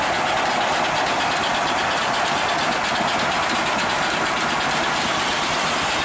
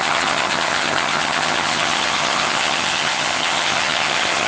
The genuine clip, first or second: first